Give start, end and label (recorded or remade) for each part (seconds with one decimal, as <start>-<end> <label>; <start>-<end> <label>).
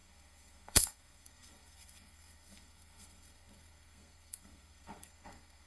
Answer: 0.0-5.7 remade